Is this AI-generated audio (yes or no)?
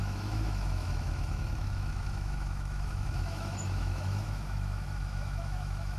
yes